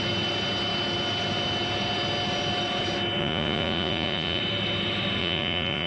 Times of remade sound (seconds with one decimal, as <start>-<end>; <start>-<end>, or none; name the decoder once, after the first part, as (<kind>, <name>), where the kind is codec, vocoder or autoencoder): 3.2-4.4 (vocoder, Vocos); 5.2-5.9